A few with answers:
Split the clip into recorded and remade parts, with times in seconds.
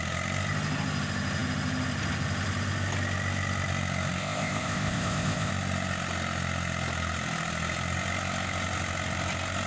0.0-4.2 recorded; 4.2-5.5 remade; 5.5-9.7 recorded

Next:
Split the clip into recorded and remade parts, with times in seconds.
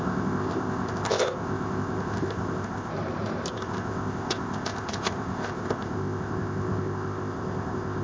0.0-2.9 remade; 2.9-3.5 recorded; 3.5-8.0 remade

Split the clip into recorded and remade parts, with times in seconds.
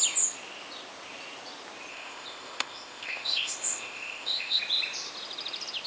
0.0-1.9 recorded; 1.9-4.6 remade; 4.6-5.9 recorded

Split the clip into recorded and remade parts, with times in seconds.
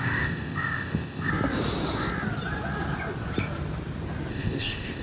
0.0-1.3 remade; 1.3-4.3 recorded; 4.3-5.0 remade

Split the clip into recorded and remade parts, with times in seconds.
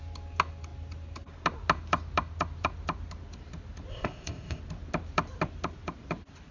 0.0-3.9 recorded; 3.9-4.6 remade; 4.6-6.5 recorded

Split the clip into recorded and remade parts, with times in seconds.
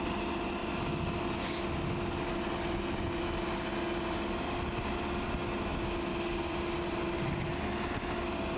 0.0-8.6 recorded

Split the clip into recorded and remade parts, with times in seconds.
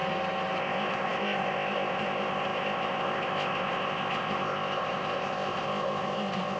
0.0-0.6 recorded; 0.6-6.6 remade